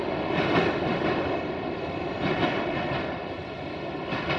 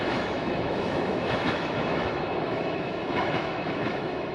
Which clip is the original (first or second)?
first